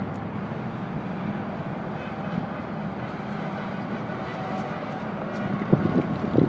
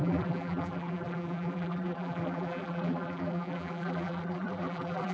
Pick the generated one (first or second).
second